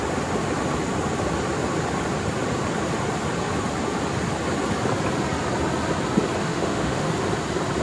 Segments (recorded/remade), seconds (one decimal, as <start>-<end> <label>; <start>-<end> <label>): 0.0-6.4 recorded; 6.4-7.1 remade; 7.1-7.8 recorded